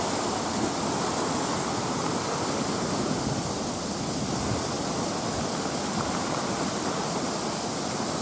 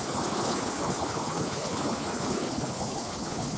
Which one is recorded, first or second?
first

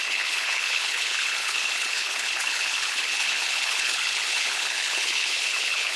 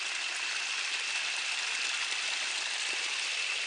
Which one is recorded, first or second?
second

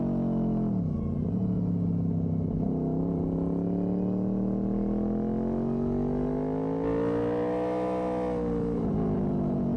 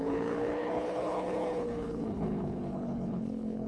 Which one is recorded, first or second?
first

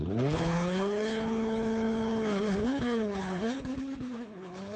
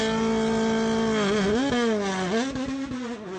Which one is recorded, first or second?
second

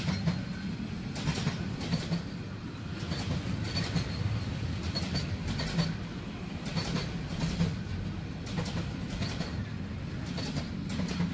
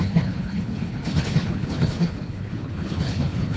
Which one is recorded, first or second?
first